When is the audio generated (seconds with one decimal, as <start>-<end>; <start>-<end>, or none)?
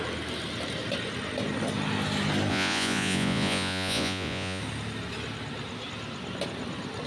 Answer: 2.5-4.6